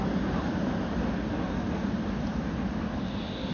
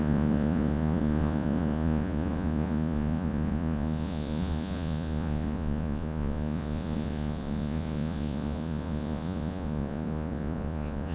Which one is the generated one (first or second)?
second